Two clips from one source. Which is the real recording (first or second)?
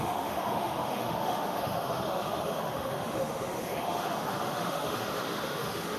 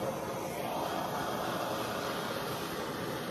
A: second